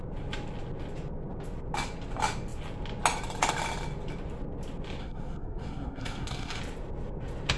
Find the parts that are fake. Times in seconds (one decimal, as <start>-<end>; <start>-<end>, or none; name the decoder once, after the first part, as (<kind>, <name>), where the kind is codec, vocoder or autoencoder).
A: 5.0-6.6 (codec, SNAC)